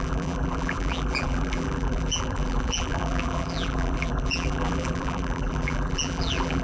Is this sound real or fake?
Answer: fake